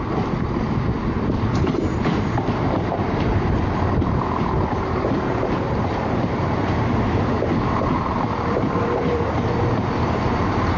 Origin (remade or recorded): remade